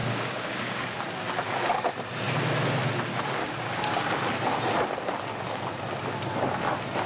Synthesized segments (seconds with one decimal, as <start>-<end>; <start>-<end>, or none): 0.0-0.8; 3.4-4.0